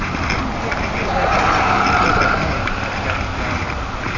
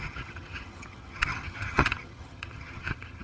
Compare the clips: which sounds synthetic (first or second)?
second